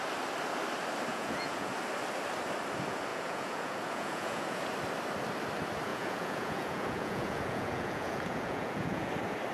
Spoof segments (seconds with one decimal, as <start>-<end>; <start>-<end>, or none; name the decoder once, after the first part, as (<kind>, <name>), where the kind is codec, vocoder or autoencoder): 1.1-1.7 (vocoder, Vocos); 3.1-4.6; 5.9-9.1